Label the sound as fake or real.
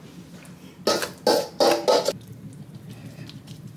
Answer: real